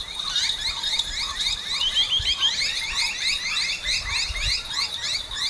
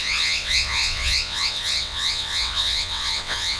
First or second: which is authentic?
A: first